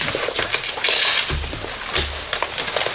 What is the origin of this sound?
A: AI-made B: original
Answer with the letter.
B